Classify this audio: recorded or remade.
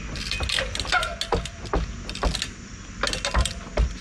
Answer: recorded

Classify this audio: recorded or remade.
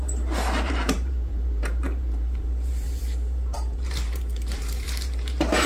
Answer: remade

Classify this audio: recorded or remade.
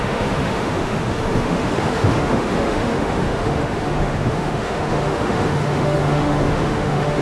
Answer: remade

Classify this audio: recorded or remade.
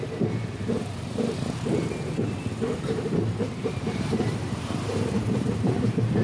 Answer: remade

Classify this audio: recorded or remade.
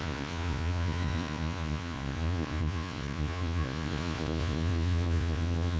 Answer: remade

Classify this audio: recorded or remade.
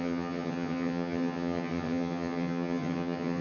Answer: remade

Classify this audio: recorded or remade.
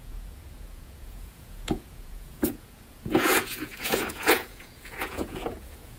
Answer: remade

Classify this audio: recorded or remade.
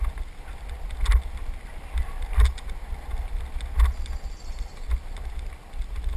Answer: recorded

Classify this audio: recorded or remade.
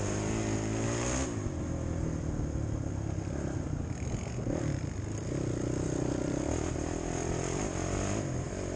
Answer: recorded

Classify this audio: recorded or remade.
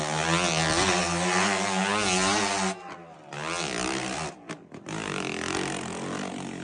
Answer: recorded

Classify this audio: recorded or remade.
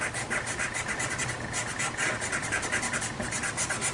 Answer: recorded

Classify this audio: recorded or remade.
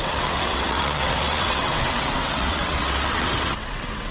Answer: remade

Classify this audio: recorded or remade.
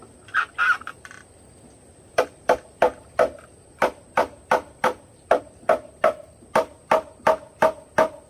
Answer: recorded